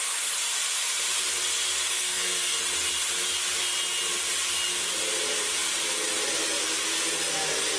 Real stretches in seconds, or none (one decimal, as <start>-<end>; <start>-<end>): 0.0-1.8; 2.6-7.8